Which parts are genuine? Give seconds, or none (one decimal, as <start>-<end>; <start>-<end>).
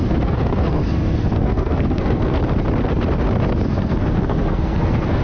2.4-3.7